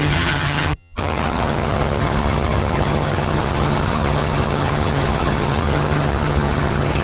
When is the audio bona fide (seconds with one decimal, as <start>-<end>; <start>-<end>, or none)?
none